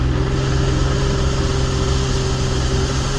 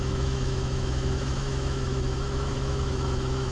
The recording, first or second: first